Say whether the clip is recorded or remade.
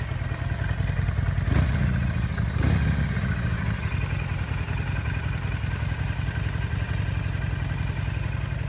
recorded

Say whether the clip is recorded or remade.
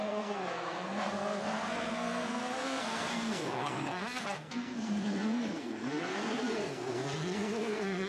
remade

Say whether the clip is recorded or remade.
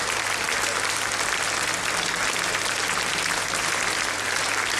recorded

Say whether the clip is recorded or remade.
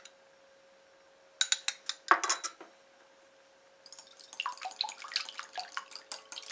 recorded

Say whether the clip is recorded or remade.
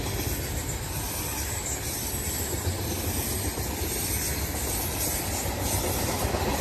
recorded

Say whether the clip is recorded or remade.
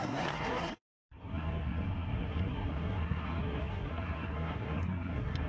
remade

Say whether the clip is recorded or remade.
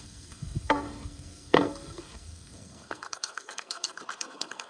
remade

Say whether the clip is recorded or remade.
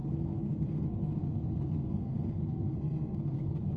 remade